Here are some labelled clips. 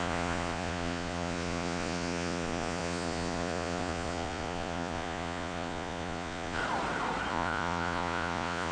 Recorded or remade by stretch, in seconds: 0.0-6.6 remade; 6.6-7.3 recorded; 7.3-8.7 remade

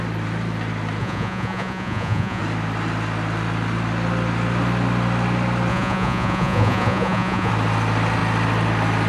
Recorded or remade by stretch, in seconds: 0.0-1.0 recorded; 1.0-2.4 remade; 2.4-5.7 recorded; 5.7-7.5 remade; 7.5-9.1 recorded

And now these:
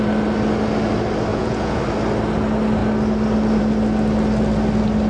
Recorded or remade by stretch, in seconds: 0.0-1.3 recorded; 1.3-1.8 remade; 1.8-5.1 recorded

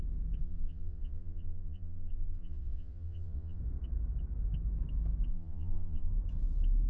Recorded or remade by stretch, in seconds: 0.0-0.4 recorded; 0.4-3.6 remade; 3.6-5.3 recorded; 5.3-6.1 remade; 6.1-6.9 recorded

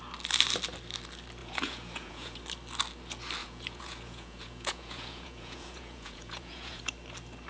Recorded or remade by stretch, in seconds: 0.0-1.4 recorded; 1.4-2.4 remade; 2.4-3.4 recorded; 3.4-6.8 remade; 6.8-7.5 recorded

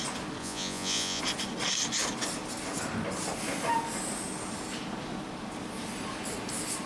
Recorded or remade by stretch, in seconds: 0.0-0.4 recorded; 0.4-1.2 remade; 1.2-6.9 recorded

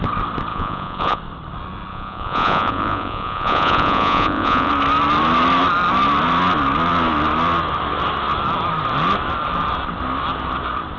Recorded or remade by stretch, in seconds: 0.0-0.5 recorded; 0.5-1.2 remade; 1.2-1.9 recorded; 1.9-4.7 remade; 4.7-11.0 recorded